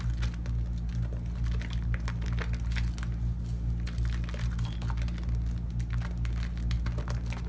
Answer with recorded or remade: recorded